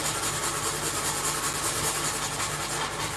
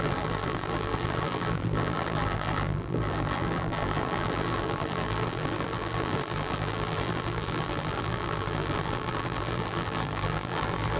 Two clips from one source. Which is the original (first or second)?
first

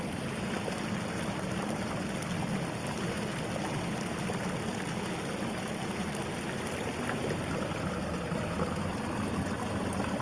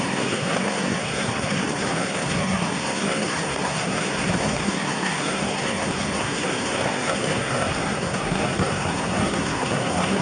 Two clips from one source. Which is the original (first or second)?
first